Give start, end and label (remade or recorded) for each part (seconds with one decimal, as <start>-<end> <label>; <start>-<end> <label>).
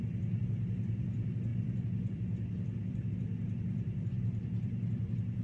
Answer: 0.0-5.4 remade